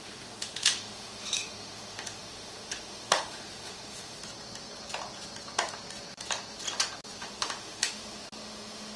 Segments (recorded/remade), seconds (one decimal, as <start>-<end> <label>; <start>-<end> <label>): 0.0-4.2 remade; 4.2-7.2 recorded; 7.2-9.0 remade